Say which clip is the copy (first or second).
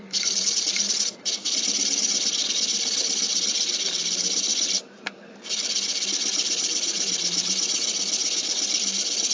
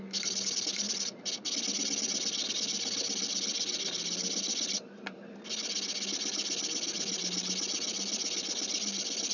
first